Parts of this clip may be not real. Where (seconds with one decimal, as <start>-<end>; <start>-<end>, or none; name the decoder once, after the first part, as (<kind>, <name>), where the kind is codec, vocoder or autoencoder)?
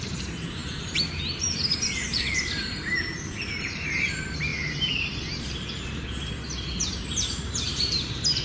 0.0-8.4 (vocoder, BigVGAN v2)